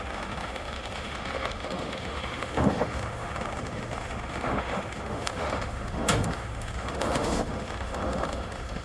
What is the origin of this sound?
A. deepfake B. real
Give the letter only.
A